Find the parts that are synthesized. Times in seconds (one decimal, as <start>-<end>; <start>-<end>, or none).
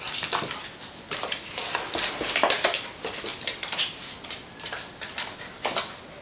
3.3-5.8